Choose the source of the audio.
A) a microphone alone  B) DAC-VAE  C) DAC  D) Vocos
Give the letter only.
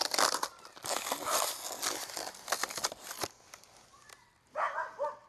A